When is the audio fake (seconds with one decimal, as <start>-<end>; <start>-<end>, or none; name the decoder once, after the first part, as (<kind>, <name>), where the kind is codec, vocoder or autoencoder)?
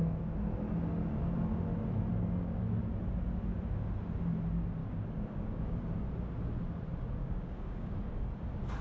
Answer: 2.1-2.8 (codec, DAC); 4.8-5.8; 7.2-8.0